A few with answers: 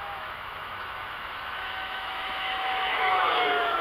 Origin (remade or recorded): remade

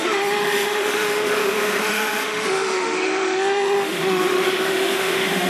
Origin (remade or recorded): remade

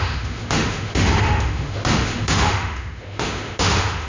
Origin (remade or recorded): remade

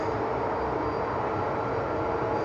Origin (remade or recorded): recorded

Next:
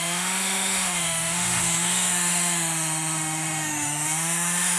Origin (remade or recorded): remade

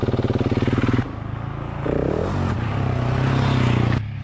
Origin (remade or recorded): recorded